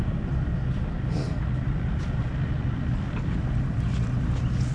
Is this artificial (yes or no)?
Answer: no